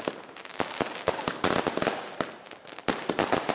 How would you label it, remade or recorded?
recorded